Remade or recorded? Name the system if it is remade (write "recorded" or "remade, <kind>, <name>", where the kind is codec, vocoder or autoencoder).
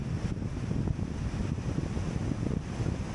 recorded